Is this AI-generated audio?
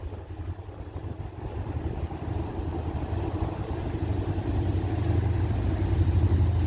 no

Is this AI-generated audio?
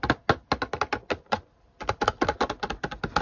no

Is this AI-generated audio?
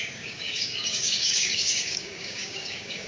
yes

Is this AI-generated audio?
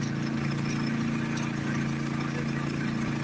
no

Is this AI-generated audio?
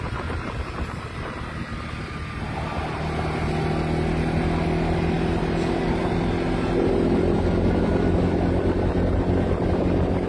no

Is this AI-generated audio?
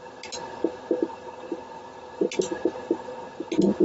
no